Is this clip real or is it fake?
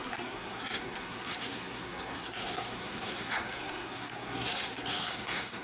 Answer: fake